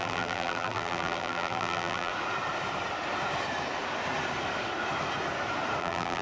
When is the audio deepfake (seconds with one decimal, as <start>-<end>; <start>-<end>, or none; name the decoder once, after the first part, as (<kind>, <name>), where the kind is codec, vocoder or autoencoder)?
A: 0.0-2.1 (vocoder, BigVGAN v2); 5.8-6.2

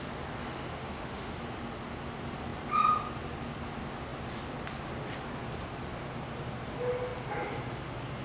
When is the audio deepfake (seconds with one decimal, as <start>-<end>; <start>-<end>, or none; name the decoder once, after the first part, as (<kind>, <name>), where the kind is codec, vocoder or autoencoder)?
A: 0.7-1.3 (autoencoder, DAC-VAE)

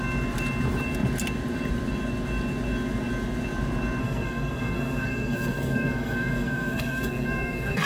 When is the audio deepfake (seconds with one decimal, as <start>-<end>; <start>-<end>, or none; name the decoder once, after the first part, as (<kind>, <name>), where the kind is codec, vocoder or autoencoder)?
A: 4.0-7.9 (codec, SNAC)

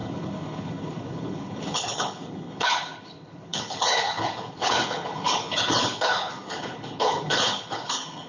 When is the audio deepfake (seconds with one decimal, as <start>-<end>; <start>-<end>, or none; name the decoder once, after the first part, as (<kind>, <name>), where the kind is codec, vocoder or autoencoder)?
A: 0.0-8.3 (codec, HILCodec)

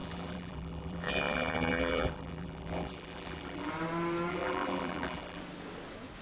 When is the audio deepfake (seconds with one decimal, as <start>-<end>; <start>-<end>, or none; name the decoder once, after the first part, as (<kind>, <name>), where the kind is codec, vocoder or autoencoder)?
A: 0.0-3.7 (vocoder, BigVGAN v2); 4.3-5.4